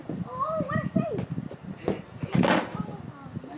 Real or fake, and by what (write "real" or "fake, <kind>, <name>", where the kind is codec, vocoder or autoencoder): real